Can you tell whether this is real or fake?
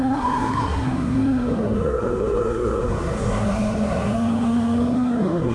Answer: fake